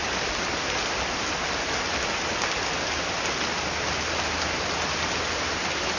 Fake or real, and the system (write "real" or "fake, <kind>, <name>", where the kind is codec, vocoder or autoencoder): real